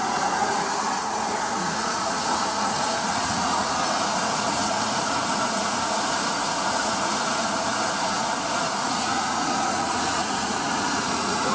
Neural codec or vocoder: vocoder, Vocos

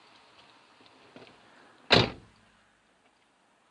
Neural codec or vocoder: none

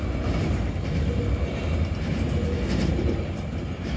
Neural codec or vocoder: none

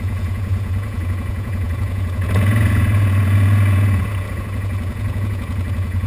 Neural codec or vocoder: vocoder, Vocos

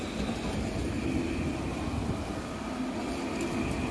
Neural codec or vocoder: none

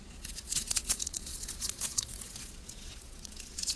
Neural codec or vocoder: vocoder, Vocos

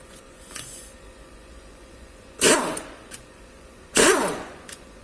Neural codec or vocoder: vocoder, Vocos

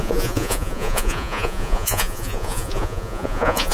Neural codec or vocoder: vocoder, Vocos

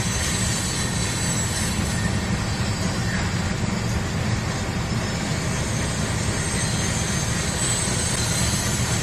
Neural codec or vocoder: none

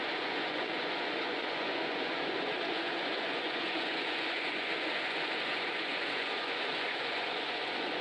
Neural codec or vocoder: vocoder, Vocos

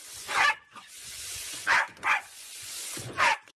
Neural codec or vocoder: vocoder, Vocos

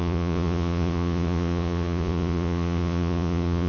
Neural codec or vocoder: vocoder, Vocos